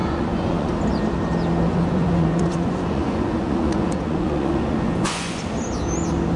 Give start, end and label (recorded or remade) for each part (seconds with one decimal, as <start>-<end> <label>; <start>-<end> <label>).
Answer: 0.0-0.7 remade; 0.7-1.7 recorded; 1.7-5.4 remade; 5.4-6.4 recorded

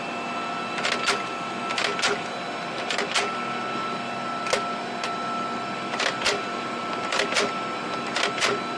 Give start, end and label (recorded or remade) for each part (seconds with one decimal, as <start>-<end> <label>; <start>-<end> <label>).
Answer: 0.0-8.8 recorded

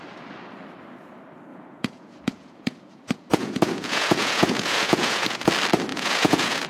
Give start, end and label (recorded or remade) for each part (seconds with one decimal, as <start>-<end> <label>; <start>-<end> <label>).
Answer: 0.0-1.5 recorded; 1.5-5.5 remade; 5.5-5.9 recorded; 5.9-6.7 remade

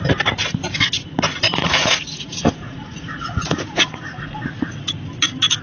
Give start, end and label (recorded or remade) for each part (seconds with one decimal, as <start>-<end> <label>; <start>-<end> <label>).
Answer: 0.0-1.6 recorded; 1.6-4.4 remade; 4.4-5.6 recorded

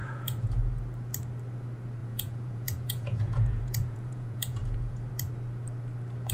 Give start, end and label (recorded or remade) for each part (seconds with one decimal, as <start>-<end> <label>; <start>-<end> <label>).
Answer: 0.0-0.8 remade; 0.8-2.0 recorded; 2.0-5.1 remade; 5.1-6.3 recorded

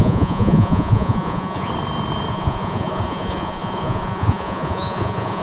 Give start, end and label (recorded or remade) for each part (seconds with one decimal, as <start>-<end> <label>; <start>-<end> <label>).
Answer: 0.0-1.7 remade; 1.7-2.3 recorded; 2.3-5.4 remade

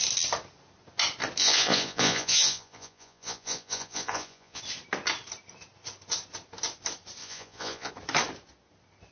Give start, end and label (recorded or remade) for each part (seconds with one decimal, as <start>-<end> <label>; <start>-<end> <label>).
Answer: 0.0-1.4 recorded; 1.4-4.6 remade; 4.6-7.2 recorded; 7.2-7.9 remade; 7.9-9.1 recorded